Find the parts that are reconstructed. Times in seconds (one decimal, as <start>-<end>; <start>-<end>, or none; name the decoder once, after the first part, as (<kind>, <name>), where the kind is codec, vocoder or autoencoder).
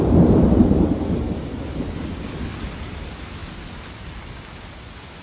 none